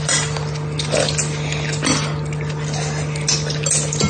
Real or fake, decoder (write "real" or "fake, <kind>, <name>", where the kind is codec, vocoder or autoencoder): real